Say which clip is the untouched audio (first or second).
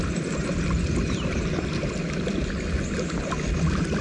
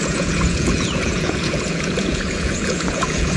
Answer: first